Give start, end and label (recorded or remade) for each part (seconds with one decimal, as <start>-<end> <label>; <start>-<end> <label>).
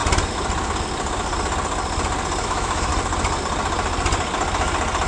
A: 0.0-2.4 recorded; 2.4-2.9 remade; 2.9-5.1 recorded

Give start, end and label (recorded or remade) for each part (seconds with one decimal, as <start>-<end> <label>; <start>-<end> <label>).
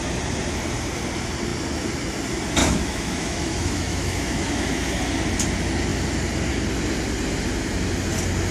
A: 0.0-2.6 recorded; 2.6-4.8 remade; 4.8-8.5 recorded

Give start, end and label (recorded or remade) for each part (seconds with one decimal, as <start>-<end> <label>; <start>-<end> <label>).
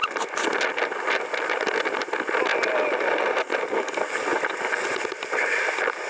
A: 0.0-6.1 recorded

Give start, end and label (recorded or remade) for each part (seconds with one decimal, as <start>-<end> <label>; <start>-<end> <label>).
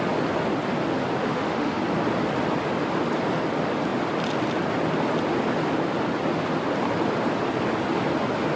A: 0.0-1.2 recorded; 1.2-1.8 remade; 1.8-8.6 recorded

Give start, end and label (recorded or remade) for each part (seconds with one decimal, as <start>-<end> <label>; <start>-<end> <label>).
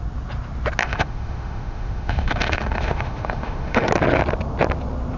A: 0.0-0.8 recorded; 0.8-3.9 remade; 3.9-5.2 recorded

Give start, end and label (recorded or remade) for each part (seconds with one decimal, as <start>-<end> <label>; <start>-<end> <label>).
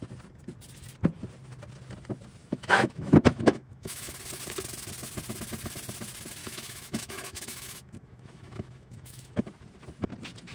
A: 0.0-2.4 recorded; 2.4-4.1 remade; 4.1-6.4 recorded; 6.4-9.4 remade; 9.4-10.5 recorded